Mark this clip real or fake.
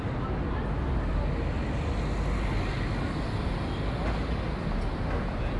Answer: real